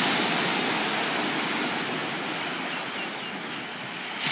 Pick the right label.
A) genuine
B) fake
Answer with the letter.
A